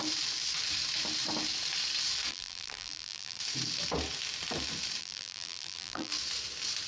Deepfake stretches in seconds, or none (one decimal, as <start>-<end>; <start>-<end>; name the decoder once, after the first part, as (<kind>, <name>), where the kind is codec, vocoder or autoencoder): 2.3-3.4 (vocoder, BigVGAN v2); 5.0-6.1